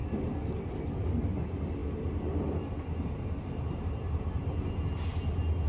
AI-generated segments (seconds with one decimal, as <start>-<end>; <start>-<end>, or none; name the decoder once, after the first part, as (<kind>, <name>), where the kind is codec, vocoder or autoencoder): 0.0-0.8 (vocoder, BigVGAN v2); 1.8-3.9